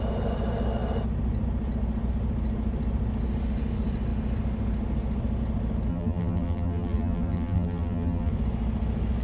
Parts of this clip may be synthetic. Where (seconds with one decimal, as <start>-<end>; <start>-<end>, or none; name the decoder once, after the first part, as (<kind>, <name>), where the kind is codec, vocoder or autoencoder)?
5.9-8.3 (vocoder, BigVGAN v2)